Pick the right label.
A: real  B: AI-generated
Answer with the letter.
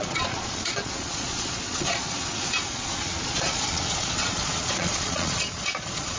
B